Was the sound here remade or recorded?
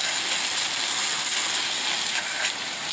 recorded